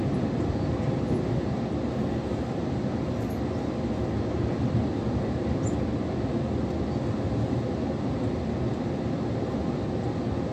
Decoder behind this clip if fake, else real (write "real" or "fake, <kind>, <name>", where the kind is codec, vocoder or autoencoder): real